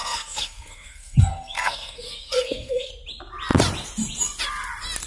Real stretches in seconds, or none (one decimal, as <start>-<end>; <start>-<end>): 2.9-5.1